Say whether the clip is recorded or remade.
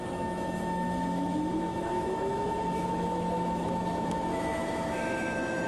remade